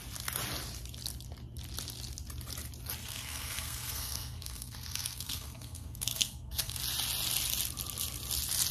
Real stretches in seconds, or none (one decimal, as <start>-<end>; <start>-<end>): 0.0-3.0; 6.8-8.7

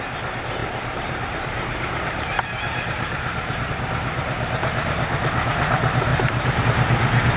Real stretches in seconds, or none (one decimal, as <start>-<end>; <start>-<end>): 0.0-0.6; 3.7-6.1; 6.6-7.4

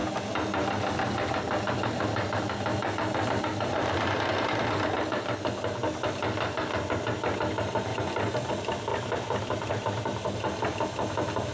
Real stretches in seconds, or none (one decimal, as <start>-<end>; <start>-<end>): 0.0-7.9; 8.5-11.5

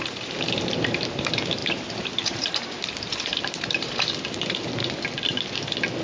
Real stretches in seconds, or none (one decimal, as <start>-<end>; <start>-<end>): 4.8-6.0

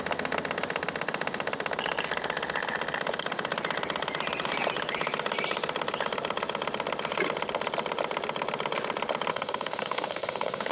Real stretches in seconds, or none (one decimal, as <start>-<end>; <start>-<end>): 0.0-9.3